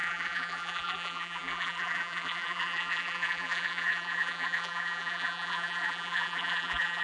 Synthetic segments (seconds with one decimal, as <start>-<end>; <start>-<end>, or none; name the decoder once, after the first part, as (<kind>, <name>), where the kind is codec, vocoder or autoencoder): 0.0-7.0 (vocoder, BigVGAN v2)